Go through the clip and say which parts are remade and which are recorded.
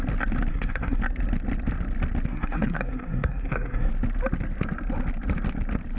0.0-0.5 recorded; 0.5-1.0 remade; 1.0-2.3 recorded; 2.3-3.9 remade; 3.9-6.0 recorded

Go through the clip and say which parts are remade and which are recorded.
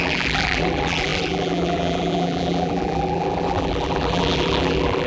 0.0-5.1 remade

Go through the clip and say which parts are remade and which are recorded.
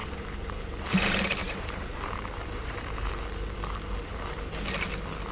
0.0-0.9 remade; 0.9-1.4 recorded; 1.4-3.1 remade; 3.1-5.3 recorded